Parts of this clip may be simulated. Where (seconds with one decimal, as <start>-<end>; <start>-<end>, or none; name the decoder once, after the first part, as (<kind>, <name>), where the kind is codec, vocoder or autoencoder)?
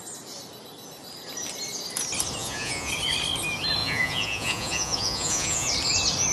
2.4-2.9 (vocoder, Vocos); 3.8-5.7